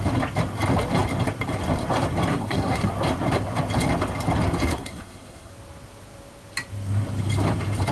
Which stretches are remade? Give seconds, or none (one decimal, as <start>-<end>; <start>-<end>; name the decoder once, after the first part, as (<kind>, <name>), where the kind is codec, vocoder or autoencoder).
2.3-2.9 (codec, SNAC); 4.7-5.5